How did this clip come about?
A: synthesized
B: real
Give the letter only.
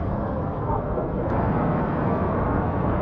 A